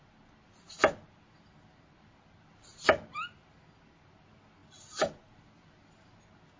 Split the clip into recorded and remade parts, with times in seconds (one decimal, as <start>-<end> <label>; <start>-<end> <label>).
0.0-6.6 recorded